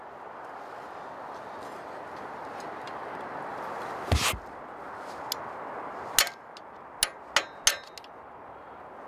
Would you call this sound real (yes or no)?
yes